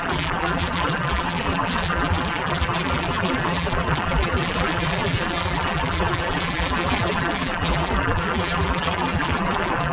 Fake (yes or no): yes